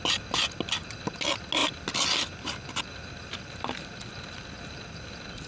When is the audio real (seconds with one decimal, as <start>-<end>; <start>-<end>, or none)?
0.0-5.5